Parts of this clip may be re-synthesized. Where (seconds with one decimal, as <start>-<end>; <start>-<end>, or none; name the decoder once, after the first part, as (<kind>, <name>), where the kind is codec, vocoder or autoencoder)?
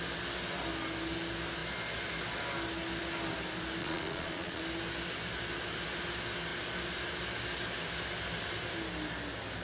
3.8-4.6 (vocoder, Vocos)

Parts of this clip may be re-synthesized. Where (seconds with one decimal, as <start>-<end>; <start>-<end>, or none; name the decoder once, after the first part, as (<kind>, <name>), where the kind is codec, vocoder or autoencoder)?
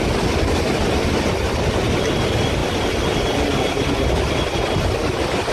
none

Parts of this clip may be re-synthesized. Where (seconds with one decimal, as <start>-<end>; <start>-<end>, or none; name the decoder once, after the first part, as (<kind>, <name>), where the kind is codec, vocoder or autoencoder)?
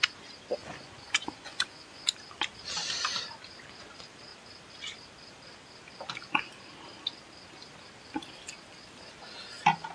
0.6-2.0 (vocoder, Vocos)